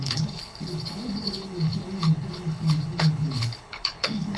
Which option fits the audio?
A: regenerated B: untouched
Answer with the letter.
A